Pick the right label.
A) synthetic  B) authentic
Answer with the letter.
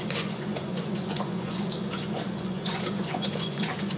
A